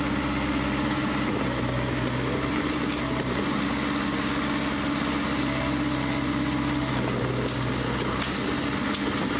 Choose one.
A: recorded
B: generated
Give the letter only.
A